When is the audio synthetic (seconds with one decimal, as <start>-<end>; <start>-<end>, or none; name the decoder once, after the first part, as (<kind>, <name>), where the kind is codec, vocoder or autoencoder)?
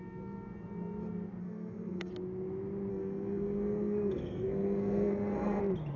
1.4-2.1 (codec, SNAC); 2.9-5.6